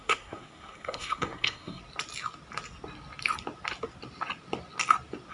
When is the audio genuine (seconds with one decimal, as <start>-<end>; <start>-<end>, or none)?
1.8-5.3